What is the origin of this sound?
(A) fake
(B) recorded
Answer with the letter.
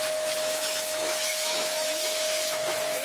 A